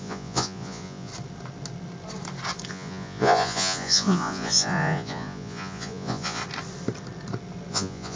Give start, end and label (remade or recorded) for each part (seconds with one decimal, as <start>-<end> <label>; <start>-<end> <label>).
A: 0.0-1.1 remade; 1.1-2.7 recorded; 2.7-6.4 remade; 6.4-7.7 recorded; 7.7-8.2 remade